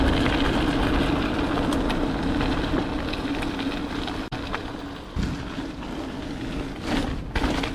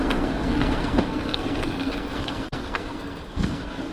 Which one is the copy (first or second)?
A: second